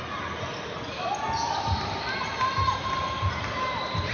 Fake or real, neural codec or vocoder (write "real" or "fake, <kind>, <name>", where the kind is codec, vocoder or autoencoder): real